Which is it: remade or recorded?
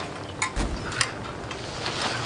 recorded